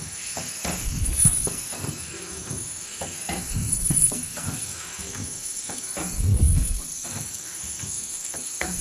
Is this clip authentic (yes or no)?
no